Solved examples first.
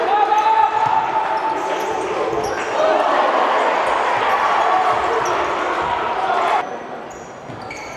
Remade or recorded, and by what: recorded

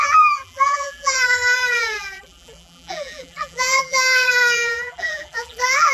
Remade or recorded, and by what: remade, vocoder, BigVGAN v2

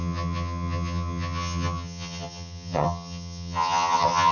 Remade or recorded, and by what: remade, vocoder, HiFi-GAN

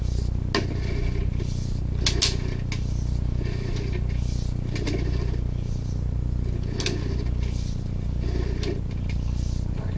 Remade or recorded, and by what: recorded